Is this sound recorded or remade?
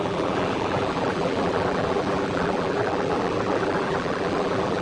remade